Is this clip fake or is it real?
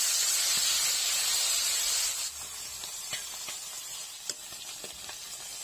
real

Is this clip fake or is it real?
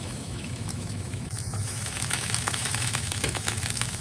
fake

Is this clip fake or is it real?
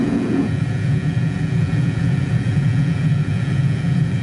fake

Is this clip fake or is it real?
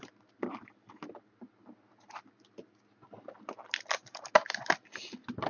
real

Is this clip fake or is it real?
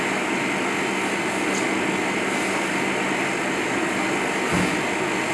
real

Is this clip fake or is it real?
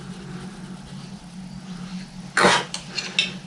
real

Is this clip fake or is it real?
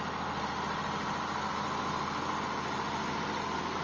real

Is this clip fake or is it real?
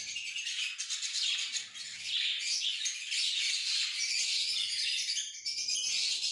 real